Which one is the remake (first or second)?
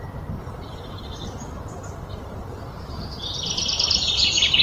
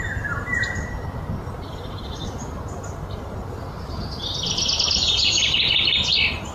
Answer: first